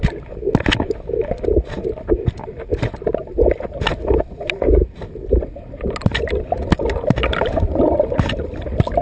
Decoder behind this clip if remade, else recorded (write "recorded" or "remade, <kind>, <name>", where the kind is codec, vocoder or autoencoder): recorded